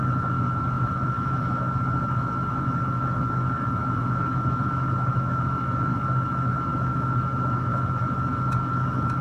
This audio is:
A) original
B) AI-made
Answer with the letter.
B